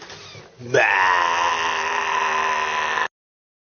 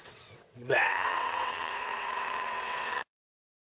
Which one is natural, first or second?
first